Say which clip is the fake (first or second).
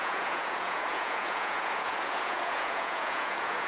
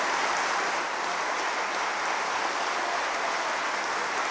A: first